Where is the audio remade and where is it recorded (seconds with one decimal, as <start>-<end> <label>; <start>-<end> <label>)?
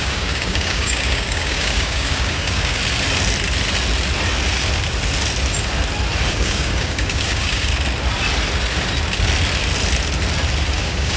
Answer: 0.0-2.8 remade; 2.8-6.3 recorded; 6.3-7.7 remade; 7.7-10.7 recorded; 10.7-11.2 remade